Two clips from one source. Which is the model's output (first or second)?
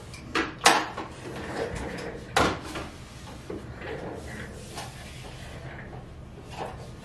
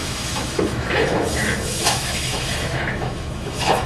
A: second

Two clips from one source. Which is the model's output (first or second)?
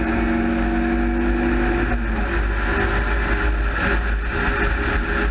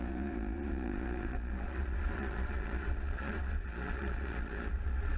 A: second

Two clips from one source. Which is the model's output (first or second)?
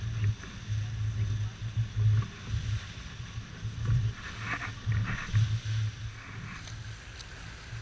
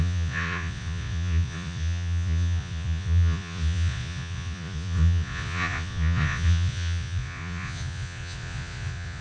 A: second